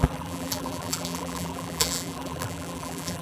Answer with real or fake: fake